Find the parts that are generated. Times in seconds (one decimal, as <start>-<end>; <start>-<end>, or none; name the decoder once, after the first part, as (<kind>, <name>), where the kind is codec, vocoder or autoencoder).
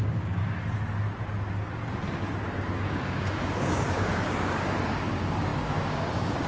0.0-0.4 (codec, DAC); 2.9-6.5